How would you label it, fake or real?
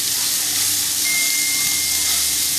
real